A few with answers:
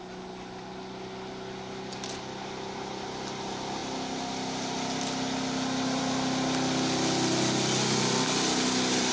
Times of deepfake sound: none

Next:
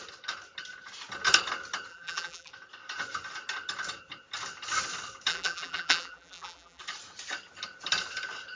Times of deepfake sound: 1.9-2.5 (vocoder, BigVGAN v2); 5.3-6.8